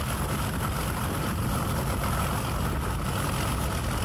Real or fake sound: fake